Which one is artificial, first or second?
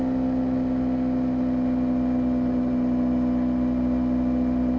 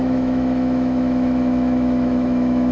second